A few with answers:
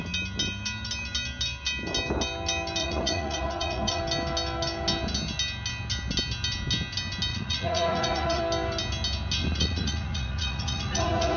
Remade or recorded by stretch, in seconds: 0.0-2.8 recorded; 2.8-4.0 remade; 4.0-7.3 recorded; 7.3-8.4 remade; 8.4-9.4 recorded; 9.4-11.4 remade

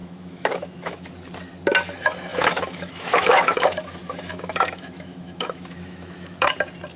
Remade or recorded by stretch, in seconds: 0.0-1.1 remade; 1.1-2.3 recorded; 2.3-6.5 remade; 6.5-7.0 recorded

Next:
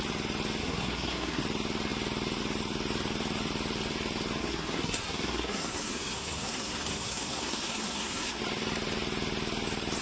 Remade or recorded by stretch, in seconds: 0.0-0.6 recorded; 0.6-1.4 remade; 1.4-4.4 recorded; 4.4-8.4 remade; 8.4-10.0 recorded

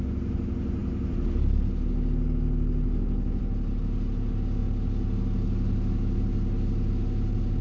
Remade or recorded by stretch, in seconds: 0.0-7.6 recorded